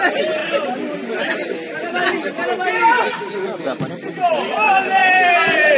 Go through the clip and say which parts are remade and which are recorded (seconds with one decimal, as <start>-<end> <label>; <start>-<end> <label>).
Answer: 0.0-5.8 recorded